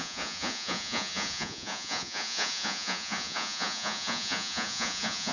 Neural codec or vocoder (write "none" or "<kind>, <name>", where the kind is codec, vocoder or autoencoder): vocoder, Vocos